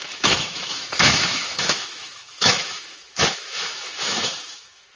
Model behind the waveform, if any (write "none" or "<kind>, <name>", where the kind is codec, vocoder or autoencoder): autoencoder, DAC-VAE